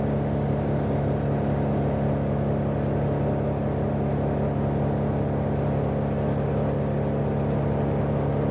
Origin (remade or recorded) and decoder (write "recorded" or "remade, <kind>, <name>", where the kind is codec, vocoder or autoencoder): recorded